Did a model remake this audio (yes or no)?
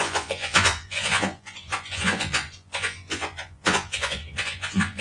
yes